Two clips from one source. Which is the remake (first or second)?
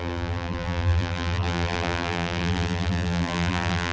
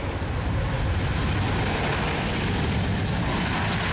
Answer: first